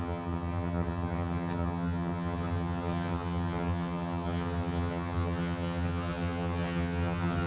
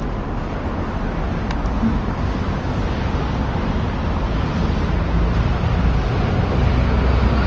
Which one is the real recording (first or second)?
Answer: second